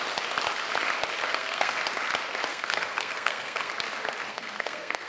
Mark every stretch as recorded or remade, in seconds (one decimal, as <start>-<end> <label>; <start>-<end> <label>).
0.0-1.2 recorded; 1.2-1.8 remade; 1.8-2.5 recorded; 2.5-3.7 remade; 3.7-4.3 recorded; 4.3-5.1 remade